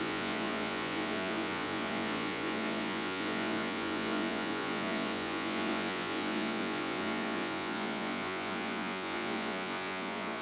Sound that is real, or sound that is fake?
fake